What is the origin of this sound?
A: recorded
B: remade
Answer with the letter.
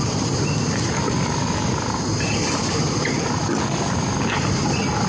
A